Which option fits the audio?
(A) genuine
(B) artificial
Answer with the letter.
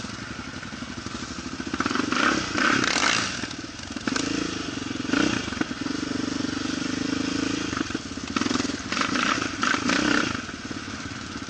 A